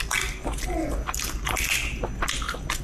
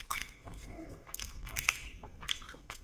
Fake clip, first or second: second